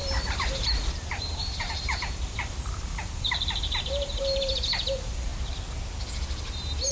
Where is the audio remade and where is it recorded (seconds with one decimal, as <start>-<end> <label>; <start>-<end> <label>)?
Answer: 0.0-5.3 remade; 5.3-6.9 recorded